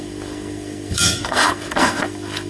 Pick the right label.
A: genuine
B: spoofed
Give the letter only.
B